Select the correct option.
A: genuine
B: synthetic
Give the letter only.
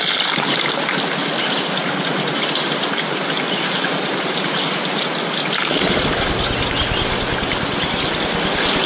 A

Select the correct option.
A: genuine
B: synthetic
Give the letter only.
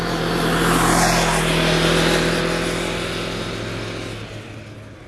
A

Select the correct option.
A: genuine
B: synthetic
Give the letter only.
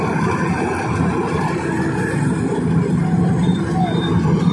A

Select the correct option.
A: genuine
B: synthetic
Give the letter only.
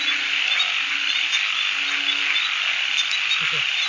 A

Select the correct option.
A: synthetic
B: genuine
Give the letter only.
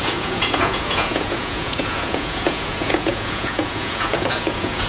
A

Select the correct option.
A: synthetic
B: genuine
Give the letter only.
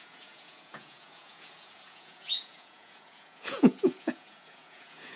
A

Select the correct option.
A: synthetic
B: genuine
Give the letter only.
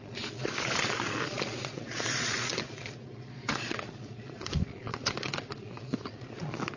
A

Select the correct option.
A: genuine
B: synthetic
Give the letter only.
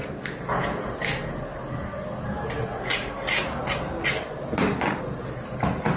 A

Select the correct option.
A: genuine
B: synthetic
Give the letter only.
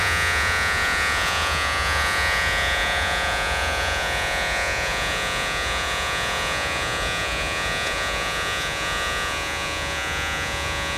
B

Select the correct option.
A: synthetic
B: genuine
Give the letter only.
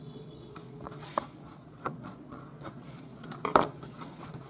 A